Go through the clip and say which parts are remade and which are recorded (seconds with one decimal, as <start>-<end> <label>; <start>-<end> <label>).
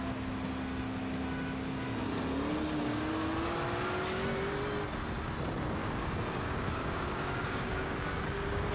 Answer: 0.0-5.8 recorded; 5.8-8.7 remade